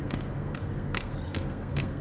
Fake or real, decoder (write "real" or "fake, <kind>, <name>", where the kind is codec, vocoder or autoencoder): fake, codec, SNAC